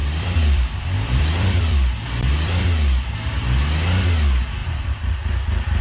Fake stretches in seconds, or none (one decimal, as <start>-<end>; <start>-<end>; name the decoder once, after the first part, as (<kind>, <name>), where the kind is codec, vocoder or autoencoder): 0.0-2.6 (vocoder, BigVGAN v2); 4.6-5.8